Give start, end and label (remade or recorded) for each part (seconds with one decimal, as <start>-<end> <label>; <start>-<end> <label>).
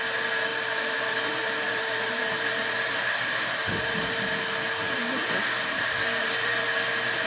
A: 0.0-0.5 recorded; 0.5-4.2 remade; 4.2-4.8 recorded; 4.8-5.4 remade; 5.4-6.2 recorded; 6.2-6.7 remade; 6.7-7.3 recorded